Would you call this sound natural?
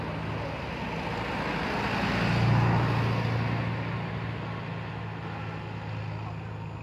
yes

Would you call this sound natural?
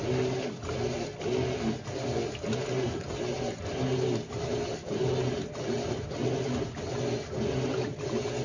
yes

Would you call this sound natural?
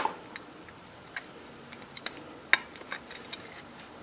yes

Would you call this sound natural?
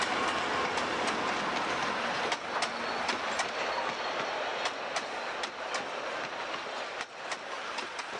yes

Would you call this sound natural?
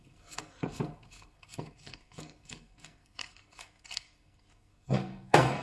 no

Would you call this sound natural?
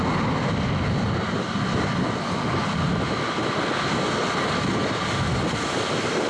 yes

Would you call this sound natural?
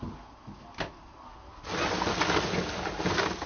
yes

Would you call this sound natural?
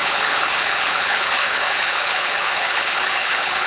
no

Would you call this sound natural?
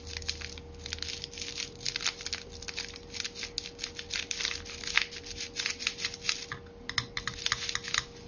yes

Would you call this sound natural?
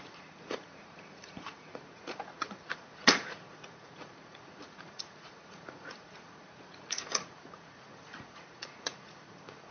no